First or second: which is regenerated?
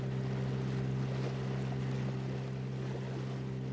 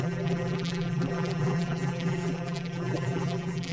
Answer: second